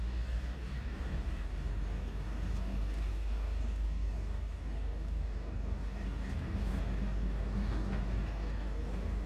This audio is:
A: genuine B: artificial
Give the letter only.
B